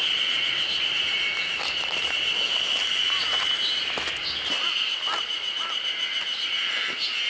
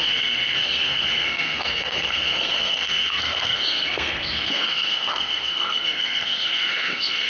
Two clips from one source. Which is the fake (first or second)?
second